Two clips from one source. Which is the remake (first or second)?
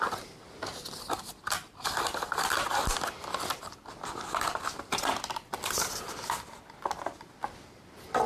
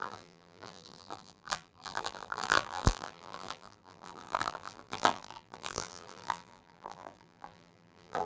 second